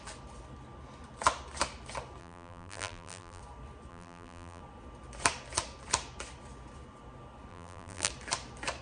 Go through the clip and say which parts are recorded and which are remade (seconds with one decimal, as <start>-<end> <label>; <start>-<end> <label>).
0.0-2.2 recorded; 2.2-3.4 remade; 3.4-3.9 recorded; 3.9-4.6 remade; 4.6-7.5 recorded; 7.5-8.1 remade; 8.1-8.8 recorded